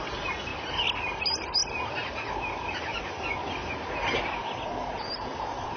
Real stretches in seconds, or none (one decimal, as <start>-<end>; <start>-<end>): 0.5-1.2; 1.6-5.1